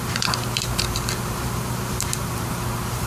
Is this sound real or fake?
fake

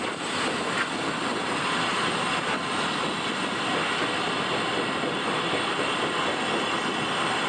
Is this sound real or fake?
real